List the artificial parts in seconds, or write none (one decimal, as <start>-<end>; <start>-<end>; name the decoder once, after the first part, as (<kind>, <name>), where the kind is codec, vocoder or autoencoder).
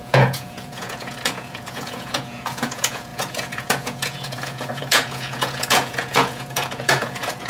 0.0-7.5 (vocoder, Vocos)